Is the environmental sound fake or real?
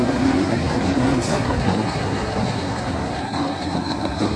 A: fake